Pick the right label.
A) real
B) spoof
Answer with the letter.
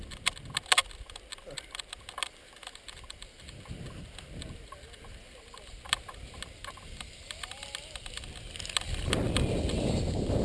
A